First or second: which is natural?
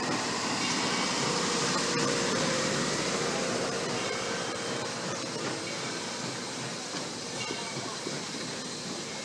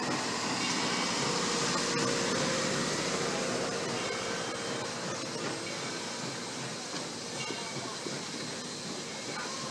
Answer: second